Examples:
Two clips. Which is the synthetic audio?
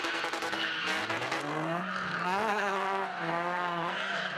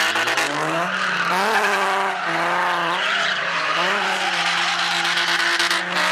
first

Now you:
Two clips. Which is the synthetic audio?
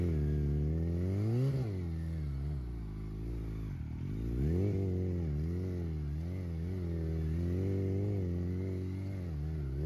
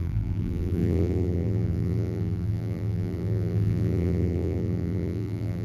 second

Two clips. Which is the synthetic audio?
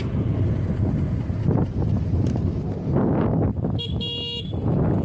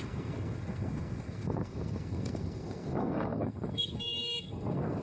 second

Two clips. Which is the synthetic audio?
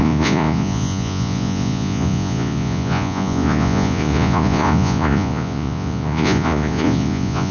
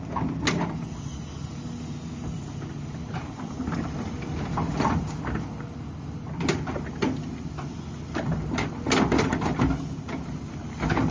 first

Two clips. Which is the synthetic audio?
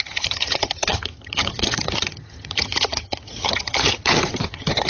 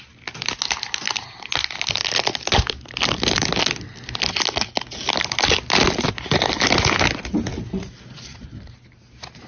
first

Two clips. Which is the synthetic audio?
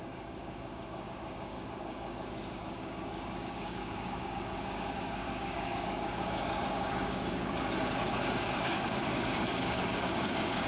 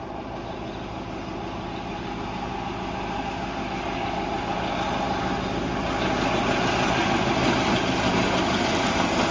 first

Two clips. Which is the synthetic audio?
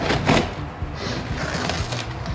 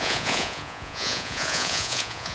second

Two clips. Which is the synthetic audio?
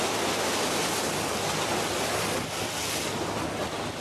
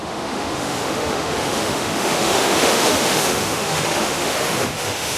second